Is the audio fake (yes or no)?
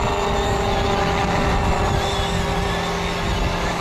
no